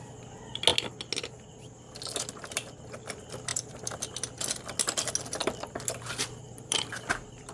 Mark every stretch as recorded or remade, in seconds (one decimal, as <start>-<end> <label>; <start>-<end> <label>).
0.0-3.5 recorded; 3.5-4.0 remade; 4.0-5.4 recorded; 5.4-6.9 remade; 6.9-7.5 recorded